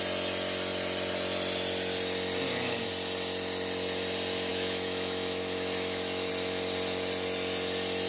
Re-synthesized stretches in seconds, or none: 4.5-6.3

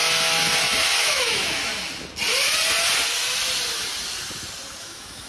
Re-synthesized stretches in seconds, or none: 1.0-1.7; 4.8-5.3